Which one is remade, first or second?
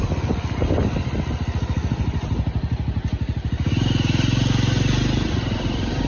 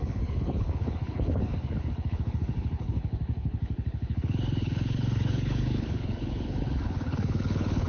second